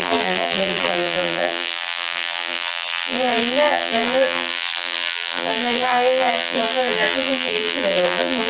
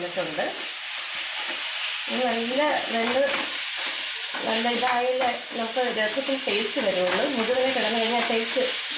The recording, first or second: second